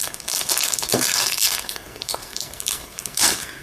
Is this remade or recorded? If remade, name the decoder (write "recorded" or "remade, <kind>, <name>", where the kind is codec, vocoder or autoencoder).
remade, codec, SNAC